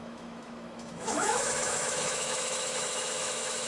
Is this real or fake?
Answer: fake